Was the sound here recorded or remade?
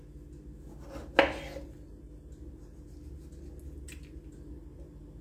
recorded